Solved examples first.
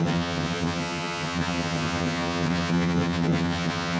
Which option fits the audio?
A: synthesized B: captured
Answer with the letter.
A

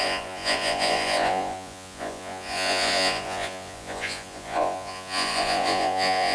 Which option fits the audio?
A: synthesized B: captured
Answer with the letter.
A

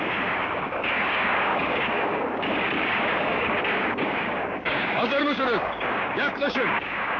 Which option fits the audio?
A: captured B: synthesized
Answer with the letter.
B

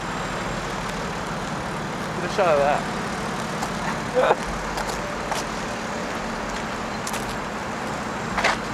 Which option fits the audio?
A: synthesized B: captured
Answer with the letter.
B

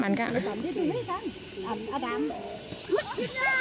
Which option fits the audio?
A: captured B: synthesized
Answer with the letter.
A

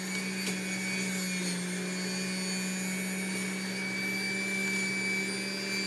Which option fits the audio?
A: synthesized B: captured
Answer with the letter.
B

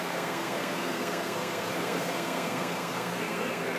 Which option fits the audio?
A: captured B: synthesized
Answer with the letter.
B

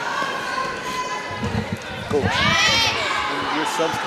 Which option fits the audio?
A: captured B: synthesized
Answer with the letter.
A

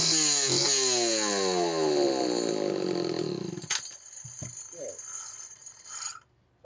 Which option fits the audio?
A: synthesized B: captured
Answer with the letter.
B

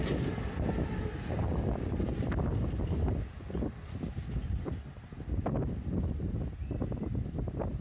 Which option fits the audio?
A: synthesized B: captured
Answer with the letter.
B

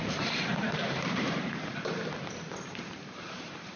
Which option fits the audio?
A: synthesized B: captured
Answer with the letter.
A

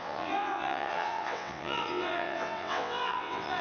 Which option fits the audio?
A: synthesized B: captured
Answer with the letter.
A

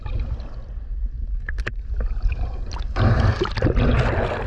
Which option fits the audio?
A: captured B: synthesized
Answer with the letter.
A